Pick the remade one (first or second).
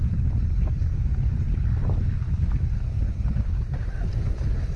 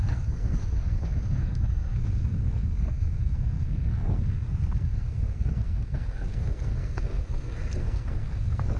second